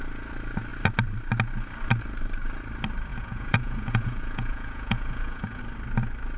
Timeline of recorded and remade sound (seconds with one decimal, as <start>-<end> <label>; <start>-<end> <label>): 0.0-3.1 recorded; 3.1-5.6 remade; 5.6-6.4 recorded

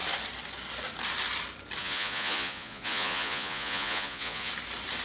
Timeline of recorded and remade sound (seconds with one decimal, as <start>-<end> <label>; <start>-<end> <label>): 0.0-1.8 recorded; 1.8-4.5 remade; 4.5-5.0 recorded

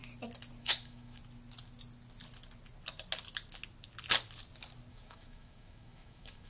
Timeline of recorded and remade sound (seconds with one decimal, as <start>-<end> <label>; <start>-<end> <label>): 0.0-0.6 recorded; 0.6-1.2 remade; 1.2-4.9 recorded; 4.9-6.5 remade